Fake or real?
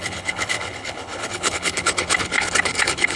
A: fake